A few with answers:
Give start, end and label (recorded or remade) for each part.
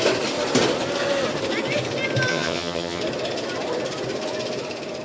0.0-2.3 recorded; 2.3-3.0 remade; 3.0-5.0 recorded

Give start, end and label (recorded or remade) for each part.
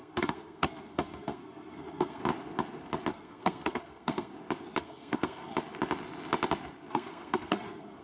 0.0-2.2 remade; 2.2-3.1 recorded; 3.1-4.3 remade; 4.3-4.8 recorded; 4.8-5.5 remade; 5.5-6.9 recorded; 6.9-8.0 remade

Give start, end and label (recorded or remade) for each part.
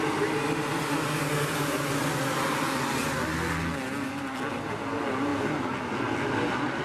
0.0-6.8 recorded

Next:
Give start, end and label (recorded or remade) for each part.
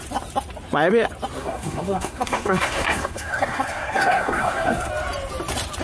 0.0-1.4 recorded; 1.4-4.9 remade; 4.9-5.8 recorded